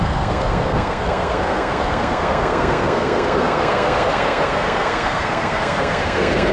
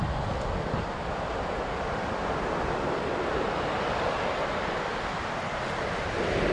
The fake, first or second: first